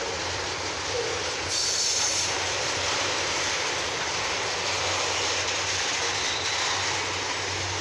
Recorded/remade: recorded